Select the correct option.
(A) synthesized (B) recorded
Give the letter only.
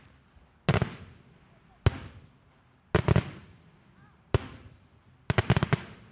B